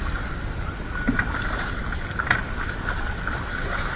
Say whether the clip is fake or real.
real